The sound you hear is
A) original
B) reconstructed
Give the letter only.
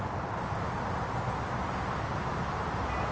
A